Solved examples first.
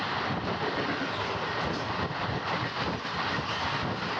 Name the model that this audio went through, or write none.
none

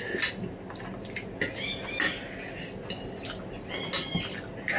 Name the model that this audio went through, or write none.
none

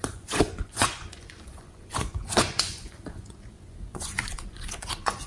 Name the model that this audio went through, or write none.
vocoder, Vocos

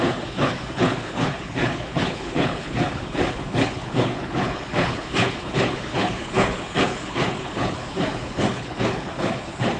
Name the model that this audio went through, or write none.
codec, HILCodec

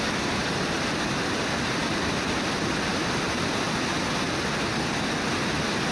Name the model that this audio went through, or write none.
none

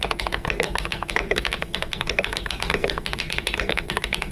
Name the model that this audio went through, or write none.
codec, SNAC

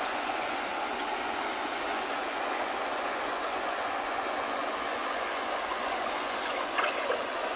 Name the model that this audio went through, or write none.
vocoder, Vocos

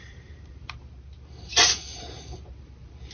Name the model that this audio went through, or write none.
vocoder, BigVGAN v2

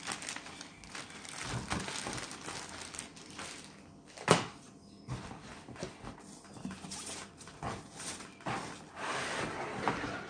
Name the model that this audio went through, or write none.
none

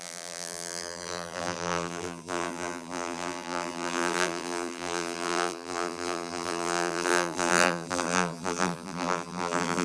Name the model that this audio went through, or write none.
vocoder, BigVGAN v2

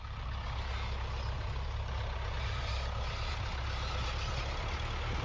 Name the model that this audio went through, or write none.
none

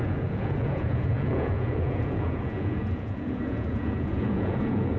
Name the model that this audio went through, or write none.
vocoder, Vocos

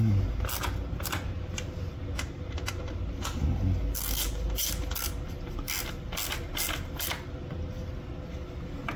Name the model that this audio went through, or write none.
none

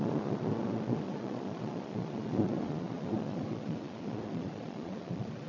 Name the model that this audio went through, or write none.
vocoder, Vocos